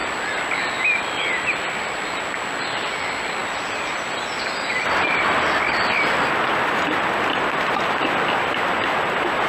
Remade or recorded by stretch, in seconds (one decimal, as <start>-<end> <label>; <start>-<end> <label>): 0.0-9.5 recorded